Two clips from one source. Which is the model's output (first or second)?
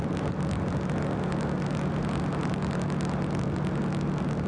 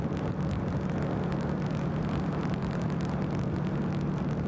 second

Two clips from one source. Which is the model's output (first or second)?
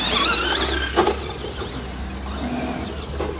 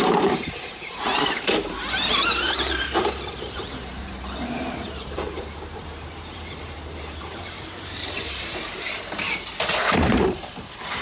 second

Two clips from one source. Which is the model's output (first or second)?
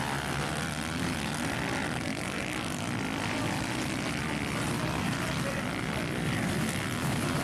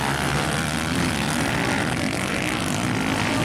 first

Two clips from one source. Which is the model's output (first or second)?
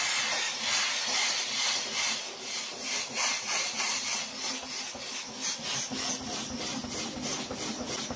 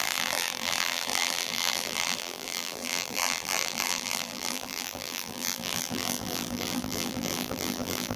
second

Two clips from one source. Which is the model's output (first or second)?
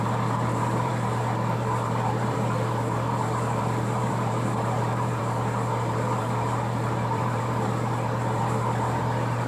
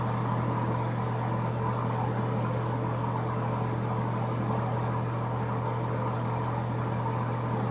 first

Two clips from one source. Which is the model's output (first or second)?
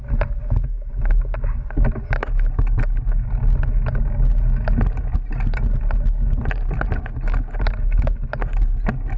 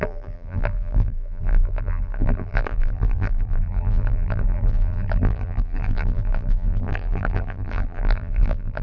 second